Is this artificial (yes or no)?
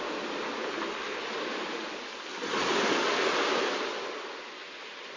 no